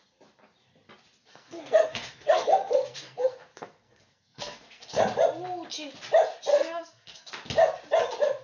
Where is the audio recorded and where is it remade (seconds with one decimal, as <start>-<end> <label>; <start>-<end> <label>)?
0.0-1.2 recorded; 1.2-5.0 remade; 5.0-6.5 recorded; 6.5-7.3 remade; 7.3-8.4 recorded